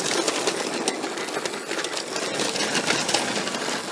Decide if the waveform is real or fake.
real